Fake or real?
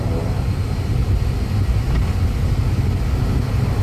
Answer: real